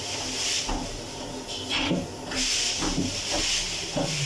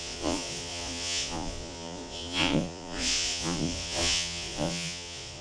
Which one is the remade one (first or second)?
second